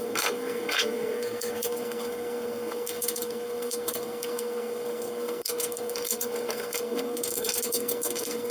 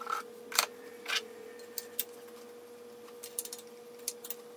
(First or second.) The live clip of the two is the second